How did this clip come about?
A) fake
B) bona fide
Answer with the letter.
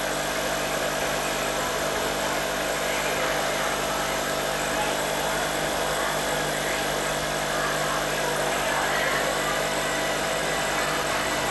B